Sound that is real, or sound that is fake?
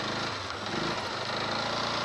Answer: real